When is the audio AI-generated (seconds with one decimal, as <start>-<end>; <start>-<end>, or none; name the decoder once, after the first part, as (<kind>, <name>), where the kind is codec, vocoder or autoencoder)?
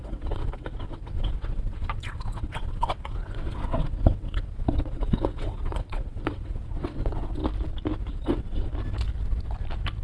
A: 0.0-7.4 (vocoder, WaveNeXt); 8.1-8.7